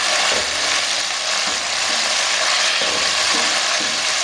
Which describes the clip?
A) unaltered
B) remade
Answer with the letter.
A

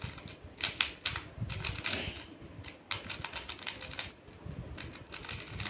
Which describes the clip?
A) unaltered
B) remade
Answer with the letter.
A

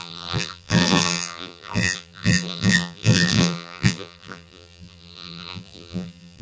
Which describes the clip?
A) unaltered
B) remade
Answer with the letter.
B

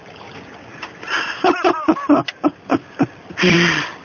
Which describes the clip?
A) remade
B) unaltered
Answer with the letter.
A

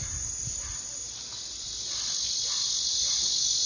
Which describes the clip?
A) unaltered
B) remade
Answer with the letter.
B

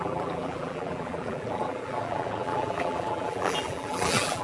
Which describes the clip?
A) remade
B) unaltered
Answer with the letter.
A